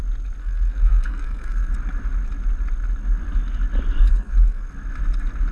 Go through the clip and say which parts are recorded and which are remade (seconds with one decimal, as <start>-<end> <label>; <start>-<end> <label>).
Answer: 0.0-0.4 recorded; 0.4-1.7 remade; 1.7-4.1 recorded; 4.1-4.7 remade; 4.7-5.5 recorded